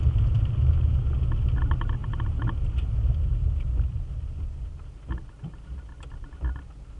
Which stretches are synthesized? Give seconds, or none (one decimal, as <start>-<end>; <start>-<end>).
none